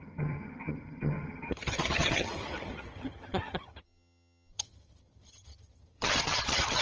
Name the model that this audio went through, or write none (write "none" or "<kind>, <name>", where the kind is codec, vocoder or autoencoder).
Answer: vocoder, HiFi-GAN